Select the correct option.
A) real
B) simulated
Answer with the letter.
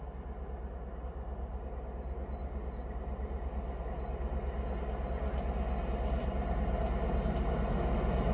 A